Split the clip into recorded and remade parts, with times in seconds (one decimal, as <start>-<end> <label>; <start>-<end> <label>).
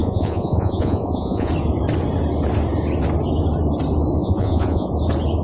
0.0-1.5 remade; 1.5-4.2 recorded; 4.2-4.9 remade; 4.9-5.4 recorded